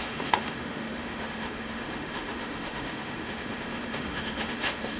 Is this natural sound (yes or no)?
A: no